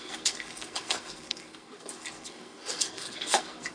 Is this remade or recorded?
remade